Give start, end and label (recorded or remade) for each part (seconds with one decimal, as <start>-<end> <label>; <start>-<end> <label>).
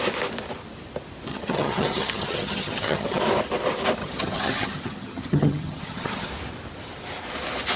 0.0-1.3 recorded; 1.3-3.2 remade; 3.2-4.0 recorded; 4.0-6.3 remade; 6.3-7.8 recorded